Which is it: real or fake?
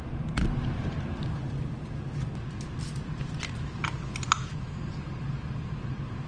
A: real